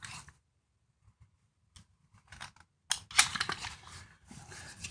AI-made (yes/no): no